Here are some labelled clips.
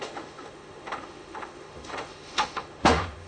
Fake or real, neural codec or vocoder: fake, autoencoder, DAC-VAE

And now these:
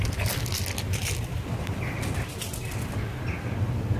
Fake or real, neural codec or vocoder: real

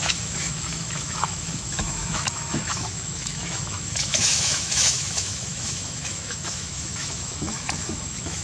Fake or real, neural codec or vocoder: fake, autoencoder, DAC-VAE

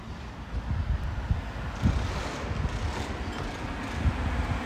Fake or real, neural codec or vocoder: real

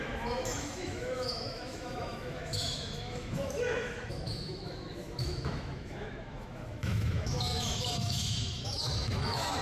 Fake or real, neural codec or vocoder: fake, autoencoder, DAC-VAE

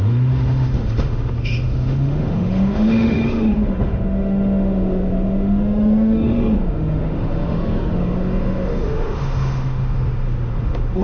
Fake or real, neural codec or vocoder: fake, autoencoder, DAC-VAE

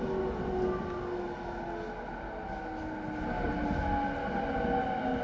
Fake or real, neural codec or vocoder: real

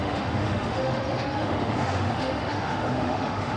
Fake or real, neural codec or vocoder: fake, autoencoder, DAC-VAE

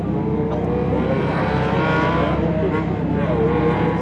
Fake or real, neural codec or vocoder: real